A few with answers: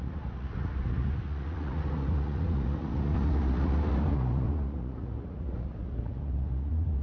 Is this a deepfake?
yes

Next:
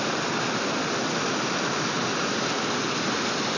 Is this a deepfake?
no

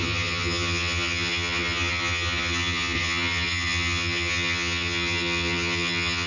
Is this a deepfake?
yes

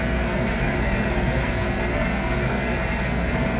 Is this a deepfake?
yes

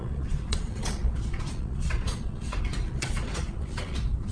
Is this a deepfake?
yes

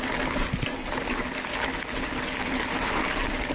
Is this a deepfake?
no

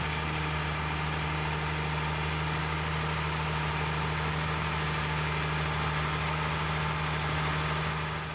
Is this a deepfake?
no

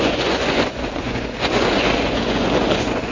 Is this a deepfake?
yes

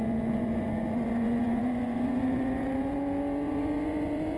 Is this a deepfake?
yes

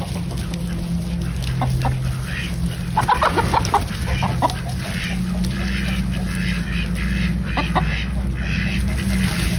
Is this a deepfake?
no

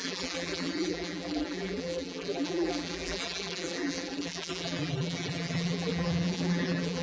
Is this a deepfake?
yes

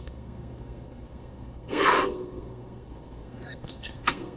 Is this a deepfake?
yes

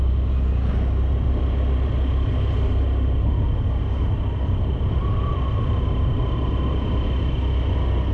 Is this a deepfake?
no